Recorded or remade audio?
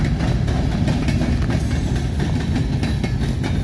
recorded